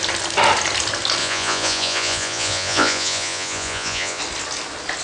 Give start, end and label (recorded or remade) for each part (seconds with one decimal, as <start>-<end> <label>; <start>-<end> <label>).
0.0-1.2 recorded; 1.2-4.2 remade; 4.2-5.0 recorded